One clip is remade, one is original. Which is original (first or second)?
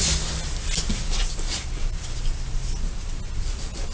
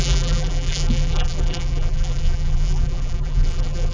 first